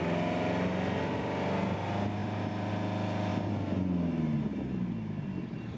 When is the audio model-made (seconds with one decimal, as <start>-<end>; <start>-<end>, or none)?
none